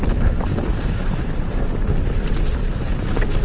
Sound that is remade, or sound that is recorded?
recorded